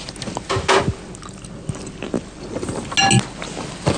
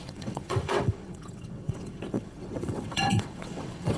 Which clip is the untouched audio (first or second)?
first